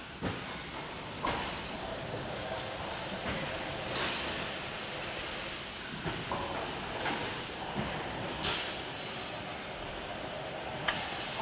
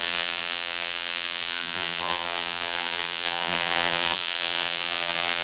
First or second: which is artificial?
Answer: second